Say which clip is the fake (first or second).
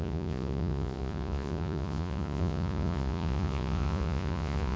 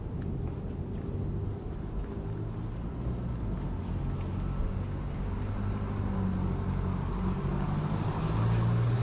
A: first